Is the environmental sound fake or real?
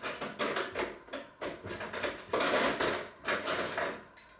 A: real